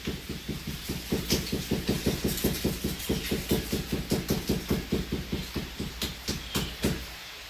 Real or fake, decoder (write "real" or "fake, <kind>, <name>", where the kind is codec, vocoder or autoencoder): real